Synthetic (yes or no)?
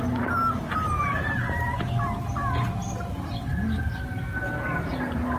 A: no